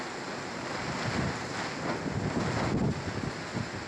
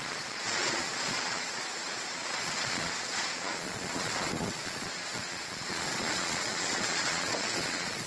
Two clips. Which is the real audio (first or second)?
first